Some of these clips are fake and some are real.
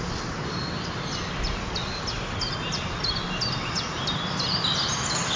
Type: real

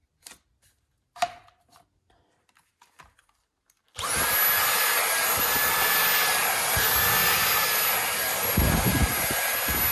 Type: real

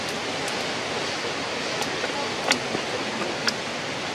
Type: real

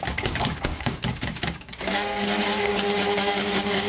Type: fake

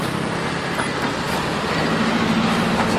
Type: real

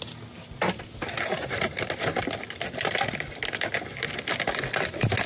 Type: real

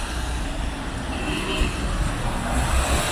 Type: real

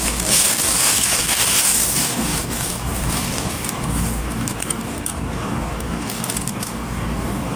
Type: fake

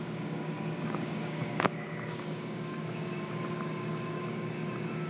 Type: fake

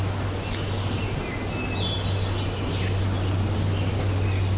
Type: real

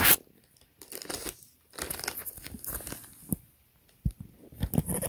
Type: real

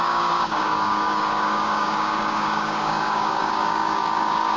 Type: fake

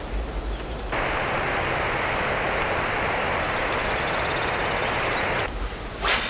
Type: real